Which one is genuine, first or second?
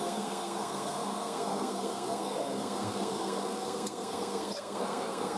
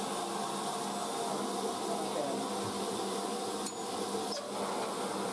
second